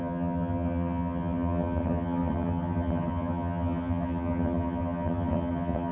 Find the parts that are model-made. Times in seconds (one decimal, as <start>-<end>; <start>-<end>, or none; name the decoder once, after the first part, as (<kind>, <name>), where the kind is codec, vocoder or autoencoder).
0.0-5.9 (vocoder, HiFi-GAN)